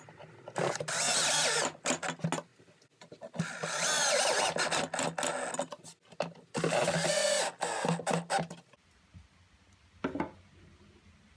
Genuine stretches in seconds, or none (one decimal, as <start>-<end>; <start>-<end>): 0.0-11.4